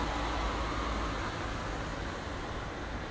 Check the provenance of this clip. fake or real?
real